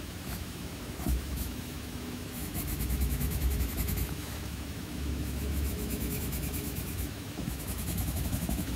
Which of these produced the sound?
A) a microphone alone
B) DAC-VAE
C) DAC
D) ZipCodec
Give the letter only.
B